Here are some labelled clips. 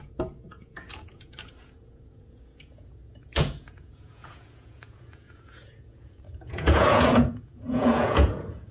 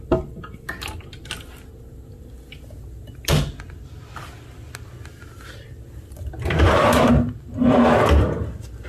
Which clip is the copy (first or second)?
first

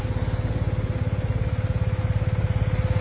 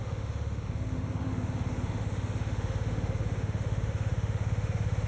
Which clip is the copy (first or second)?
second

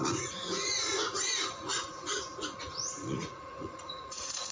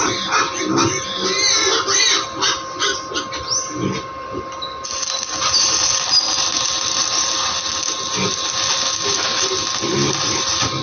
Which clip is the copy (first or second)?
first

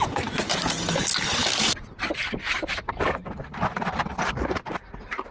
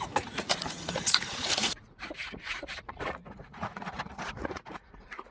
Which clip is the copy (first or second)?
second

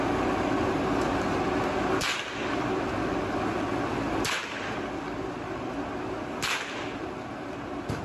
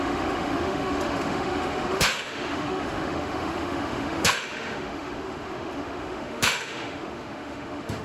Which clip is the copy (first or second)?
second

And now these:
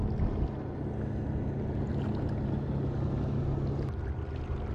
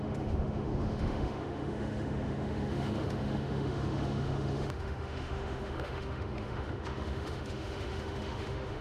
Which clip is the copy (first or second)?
second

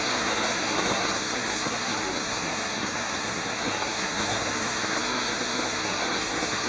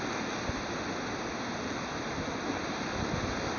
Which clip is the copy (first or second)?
first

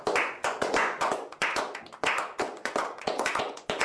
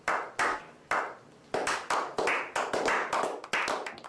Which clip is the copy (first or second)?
first